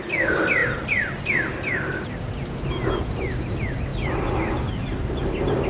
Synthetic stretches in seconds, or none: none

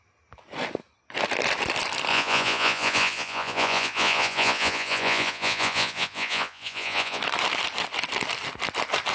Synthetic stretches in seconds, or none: 2.1-7.2 (vocoder, Vocos)

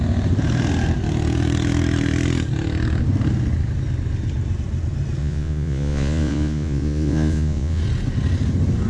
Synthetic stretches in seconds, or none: 5.2-7.8 (vocoder, Vocos)

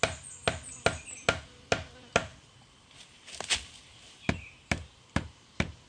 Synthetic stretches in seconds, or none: none

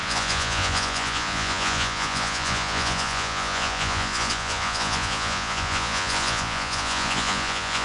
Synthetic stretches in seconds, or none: 0.0-7.8 (vocoder, Vocos)

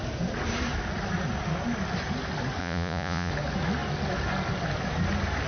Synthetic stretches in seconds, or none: 2.6-3.3 (vocoder, Vocos)

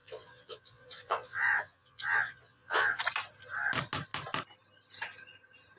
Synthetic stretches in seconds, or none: 0.0-3.0 (vocoder, Vocos)